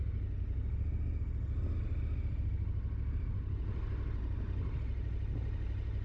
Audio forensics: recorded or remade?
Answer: recorded